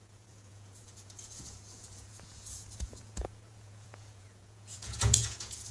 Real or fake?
fake